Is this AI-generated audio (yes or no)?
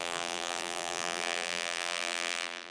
yes